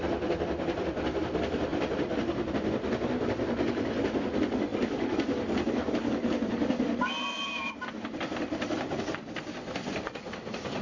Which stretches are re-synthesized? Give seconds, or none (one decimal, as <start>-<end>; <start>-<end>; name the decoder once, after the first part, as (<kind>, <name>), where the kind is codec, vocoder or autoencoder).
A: 1.7-2.5 (vocoder, BigVGAN v2); 4.7-9.0